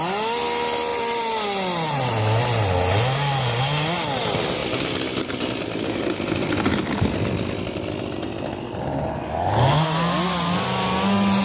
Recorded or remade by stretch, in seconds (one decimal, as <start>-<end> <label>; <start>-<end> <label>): 0.0-11.4 recorded